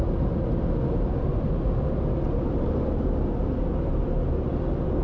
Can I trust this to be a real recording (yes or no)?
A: yes